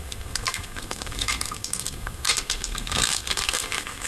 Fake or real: fake